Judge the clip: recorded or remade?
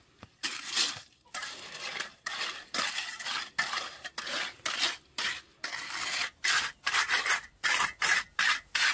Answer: recorded